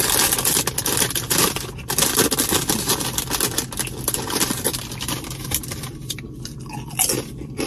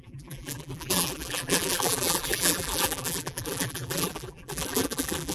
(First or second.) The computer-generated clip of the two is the second